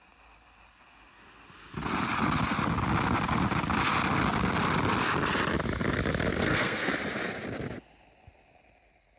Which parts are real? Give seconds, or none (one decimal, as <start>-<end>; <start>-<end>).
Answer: 0.0-6.3; 6.9-9.2